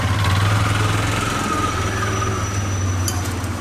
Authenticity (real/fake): real